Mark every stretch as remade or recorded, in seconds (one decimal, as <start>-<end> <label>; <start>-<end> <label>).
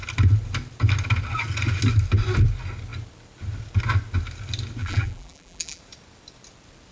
0.0-4.8 recorded; 4.8-5.8 remade; 5.8-6.9 recorded